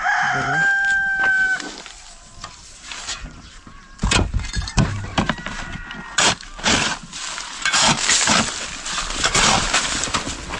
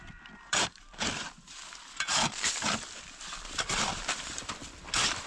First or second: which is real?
first